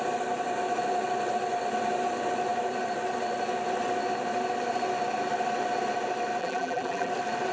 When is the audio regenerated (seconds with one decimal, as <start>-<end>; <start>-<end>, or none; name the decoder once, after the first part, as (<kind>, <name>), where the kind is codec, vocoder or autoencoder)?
6.4-7.1 (vocoder, BigVGAN v2)